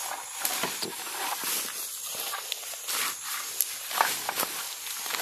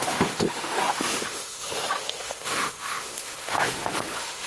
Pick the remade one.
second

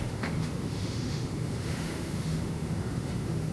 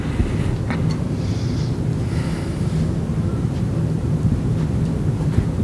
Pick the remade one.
first